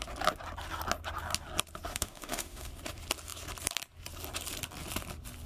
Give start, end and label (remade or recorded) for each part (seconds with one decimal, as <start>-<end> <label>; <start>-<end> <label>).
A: 0.0-1.9 recorded; 1.9-2.7 remade; 2.7-5.5 recorded